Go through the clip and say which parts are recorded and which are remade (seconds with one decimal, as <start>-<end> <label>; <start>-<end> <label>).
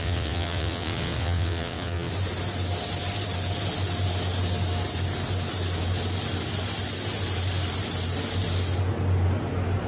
0.0-2.1 remade; 2.1-9.9 recorded